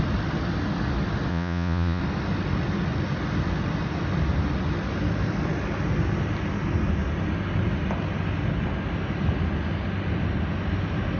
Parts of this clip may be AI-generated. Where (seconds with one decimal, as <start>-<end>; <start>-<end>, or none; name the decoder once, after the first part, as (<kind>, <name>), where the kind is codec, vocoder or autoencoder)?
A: 1.3-2.0 (vocoder, Vocos)